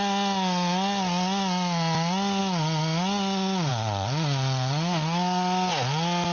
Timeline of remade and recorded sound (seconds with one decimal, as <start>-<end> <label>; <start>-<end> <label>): 0.0-6.3 recorded